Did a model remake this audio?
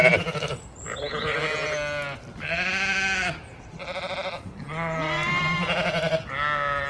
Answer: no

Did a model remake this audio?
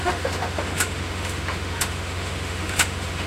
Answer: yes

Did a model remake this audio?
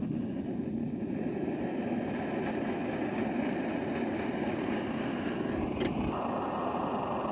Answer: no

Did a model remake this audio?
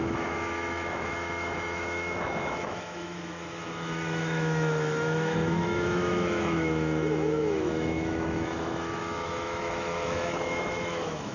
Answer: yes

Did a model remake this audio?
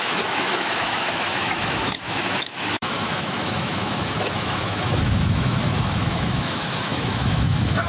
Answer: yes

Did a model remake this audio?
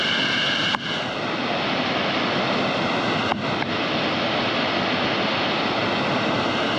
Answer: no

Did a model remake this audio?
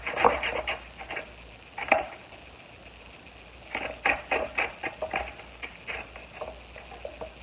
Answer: no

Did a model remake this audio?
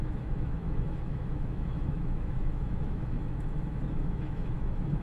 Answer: yes